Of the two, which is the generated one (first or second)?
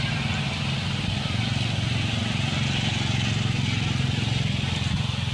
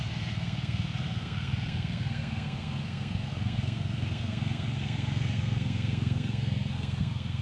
second